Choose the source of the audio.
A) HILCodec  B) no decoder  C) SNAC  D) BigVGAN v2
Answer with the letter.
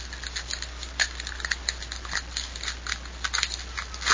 B